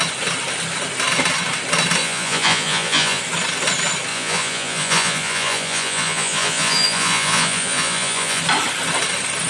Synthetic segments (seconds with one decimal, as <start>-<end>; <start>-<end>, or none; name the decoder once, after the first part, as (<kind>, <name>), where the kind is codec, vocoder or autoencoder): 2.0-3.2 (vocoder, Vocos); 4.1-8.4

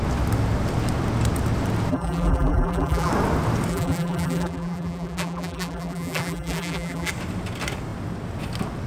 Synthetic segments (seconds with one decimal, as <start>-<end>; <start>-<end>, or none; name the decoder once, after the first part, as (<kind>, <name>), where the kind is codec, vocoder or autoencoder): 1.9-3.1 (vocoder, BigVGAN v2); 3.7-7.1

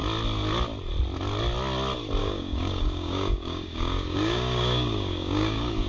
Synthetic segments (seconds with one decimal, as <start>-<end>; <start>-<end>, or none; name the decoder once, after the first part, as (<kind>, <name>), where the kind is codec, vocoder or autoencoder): 2.2-5.9 (codec, DAC)

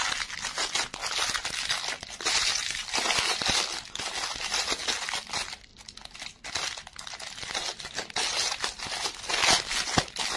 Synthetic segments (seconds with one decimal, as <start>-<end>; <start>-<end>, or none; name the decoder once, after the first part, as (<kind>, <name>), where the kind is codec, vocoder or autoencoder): none